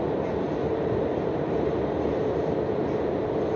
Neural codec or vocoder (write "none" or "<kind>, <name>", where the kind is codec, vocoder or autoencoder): none